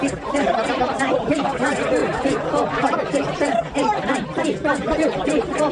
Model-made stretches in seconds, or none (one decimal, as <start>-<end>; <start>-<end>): 2.0-3.4; 4.6-5.2